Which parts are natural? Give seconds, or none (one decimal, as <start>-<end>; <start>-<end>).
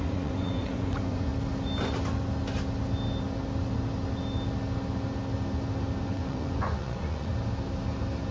1.3-6.0; 7.3-8.3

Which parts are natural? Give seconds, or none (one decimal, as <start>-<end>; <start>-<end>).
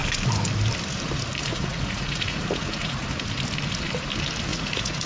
0.0-1.4; 3.1-4.5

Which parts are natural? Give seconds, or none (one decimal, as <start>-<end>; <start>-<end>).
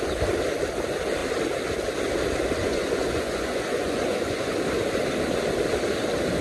0.0-2.6; 4.5-6.4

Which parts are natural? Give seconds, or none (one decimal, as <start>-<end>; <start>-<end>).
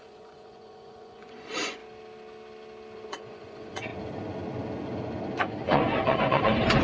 1.8-3.1; 3.9-5.4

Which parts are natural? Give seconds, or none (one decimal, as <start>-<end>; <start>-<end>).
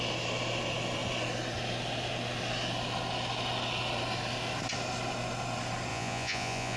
0.0-5.9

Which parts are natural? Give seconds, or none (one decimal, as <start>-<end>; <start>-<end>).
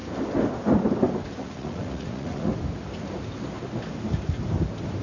0.0-1.4; 2.5-5.0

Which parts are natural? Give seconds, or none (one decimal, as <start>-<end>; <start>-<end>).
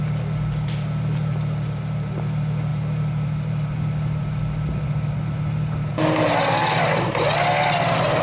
0.0-8.2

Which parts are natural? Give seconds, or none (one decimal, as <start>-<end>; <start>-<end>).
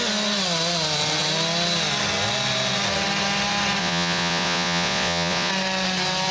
0.0-3.8; 5.5-6.3